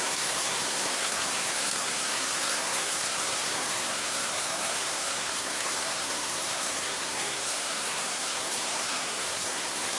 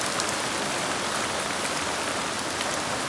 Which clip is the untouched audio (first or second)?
second